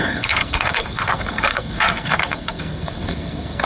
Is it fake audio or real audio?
fake